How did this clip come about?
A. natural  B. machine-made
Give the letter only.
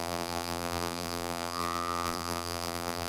B